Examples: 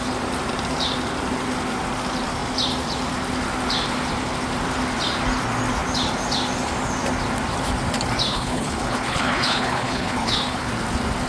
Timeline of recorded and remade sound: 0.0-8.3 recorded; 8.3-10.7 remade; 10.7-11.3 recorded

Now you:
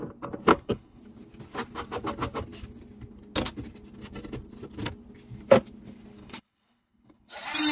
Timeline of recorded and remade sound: 0.0-0.5 recorded; 0.5-1.0 remade; 1.0-6.2 recorded; 6.2-7.3 remade; 7.3-7.7 recorded

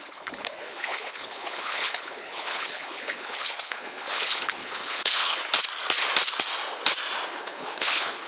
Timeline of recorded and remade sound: 0.0-5.4 remade; 5.4-7.3 recorded; 7.3-8.3 remade

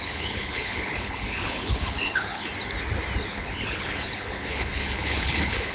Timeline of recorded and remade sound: 0.0-2.5 remade; 2.5-3.3 recorded; 3.3-5.7 remade

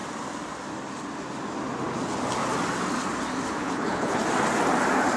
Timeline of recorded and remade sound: 0.0-3.6 recorded; 3.6-4.2 remade; 4.2-5.2 recorded

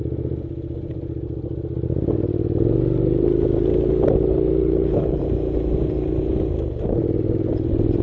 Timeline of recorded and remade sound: 0.0-4.6 recorded; 4.6-5.2 remade; 5.2-8.0 recorded

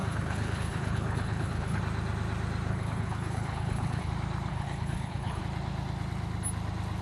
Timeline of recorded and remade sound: 0.0-1.8 remade; 1.8-2.7 recorded; 2.7-4.1 remade; 4.1-4.5 recorded; 4.5-5.4 remade; 5.4-7.0 recorded